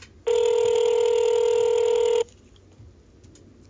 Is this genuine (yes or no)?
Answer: yes